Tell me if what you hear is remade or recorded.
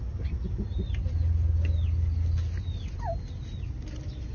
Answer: recorded